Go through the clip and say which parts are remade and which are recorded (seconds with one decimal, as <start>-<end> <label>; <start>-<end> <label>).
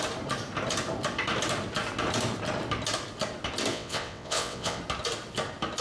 0.0-3.7 recorded; 3.7-4.8 remade; 4.8-5.8 recorded